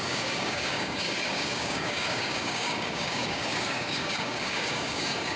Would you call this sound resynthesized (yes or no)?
yes